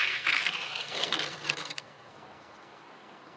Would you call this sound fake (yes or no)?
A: yes